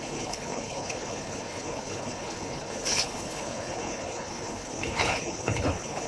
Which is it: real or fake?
fake